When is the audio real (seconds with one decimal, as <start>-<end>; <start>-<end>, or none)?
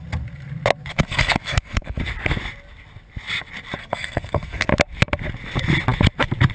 0.0-0.9; 2.0-3.8; 4.7-6.5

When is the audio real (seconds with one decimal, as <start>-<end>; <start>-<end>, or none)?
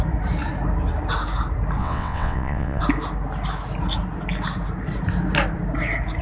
0.0-1.8; 2.8-6.2